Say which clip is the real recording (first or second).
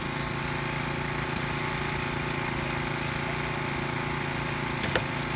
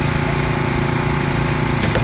first